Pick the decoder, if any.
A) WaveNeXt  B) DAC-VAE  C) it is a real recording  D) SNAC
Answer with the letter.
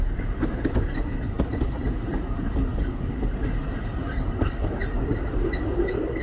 C